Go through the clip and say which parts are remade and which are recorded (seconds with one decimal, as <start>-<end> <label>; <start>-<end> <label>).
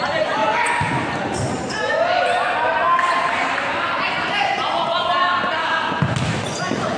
0.0-7.0 recorded